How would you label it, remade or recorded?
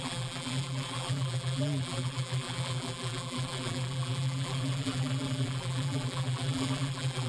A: remade